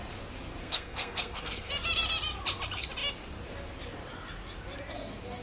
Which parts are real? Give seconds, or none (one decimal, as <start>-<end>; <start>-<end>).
0.0-0.6; 1.7-5.4